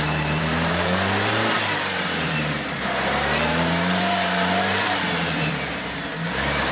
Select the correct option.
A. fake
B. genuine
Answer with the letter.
A